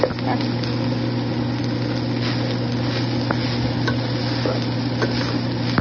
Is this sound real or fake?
real